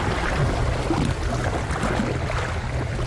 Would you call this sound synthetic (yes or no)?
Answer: no